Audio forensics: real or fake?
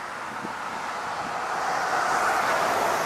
real